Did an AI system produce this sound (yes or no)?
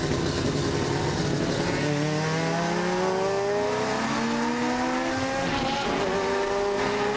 no